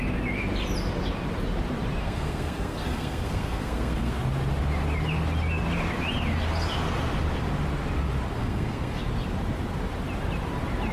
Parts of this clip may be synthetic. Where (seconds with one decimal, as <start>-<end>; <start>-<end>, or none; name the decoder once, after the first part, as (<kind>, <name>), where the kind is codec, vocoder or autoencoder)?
2.0-4.2 (codec, SNAC); 8.4-9.0